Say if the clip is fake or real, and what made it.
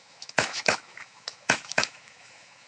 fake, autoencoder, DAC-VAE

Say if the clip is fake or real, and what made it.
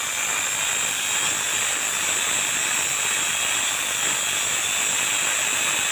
real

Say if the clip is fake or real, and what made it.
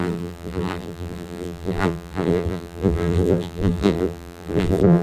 fake, vocoder, BigVGAN v2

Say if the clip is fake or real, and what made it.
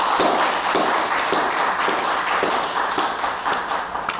real